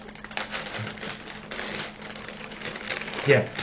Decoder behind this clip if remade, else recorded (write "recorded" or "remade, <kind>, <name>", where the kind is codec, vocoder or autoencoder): recorded